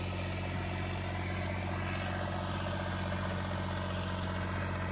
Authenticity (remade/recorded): recorded